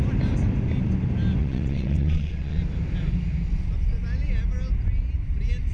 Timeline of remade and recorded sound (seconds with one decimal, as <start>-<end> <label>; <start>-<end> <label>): 0.0-1.4 recorded; 1.4-2.6 remade; 2.6-5.7 recorded